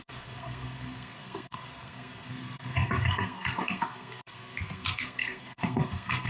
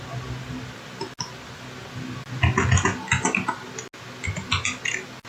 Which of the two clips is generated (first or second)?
first